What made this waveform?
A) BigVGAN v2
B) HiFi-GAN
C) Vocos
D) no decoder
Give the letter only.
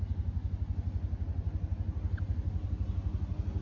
D